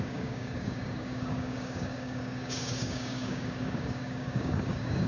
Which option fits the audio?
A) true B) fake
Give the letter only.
B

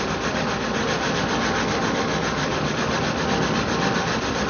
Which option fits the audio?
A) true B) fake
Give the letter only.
A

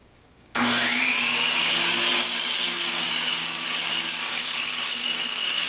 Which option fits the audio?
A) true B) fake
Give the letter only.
B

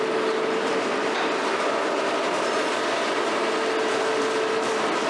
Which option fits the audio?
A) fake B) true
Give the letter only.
B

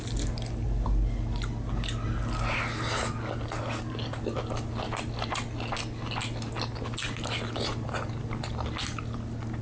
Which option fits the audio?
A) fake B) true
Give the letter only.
B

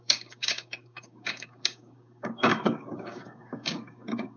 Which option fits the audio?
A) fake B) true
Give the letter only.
A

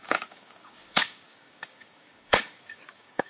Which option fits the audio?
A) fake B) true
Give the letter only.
A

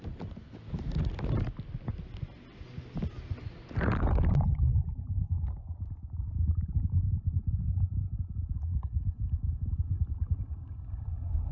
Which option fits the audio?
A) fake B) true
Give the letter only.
B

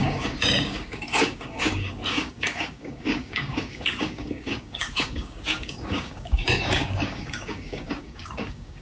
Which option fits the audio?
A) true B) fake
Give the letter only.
B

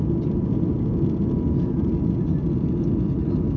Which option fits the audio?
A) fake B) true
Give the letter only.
B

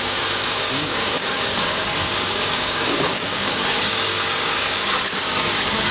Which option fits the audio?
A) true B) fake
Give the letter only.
B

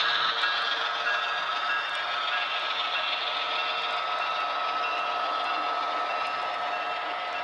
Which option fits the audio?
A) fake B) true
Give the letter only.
B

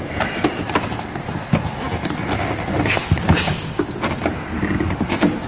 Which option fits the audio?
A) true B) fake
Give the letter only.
A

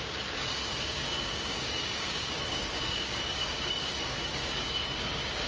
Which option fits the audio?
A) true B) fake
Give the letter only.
B